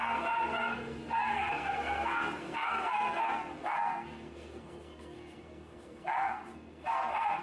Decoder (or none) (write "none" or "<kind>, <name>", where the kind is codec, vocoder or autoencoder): codec, SNAC